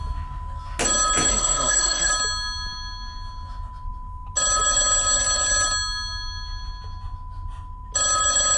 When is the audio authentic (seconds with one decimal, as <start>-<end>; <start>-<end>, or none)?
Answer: 0.0-1.3; 2.1-8.6